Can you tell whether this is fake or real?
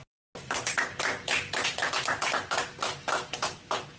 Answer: real